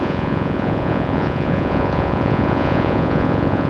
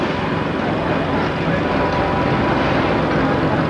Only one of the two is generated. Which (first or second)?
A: first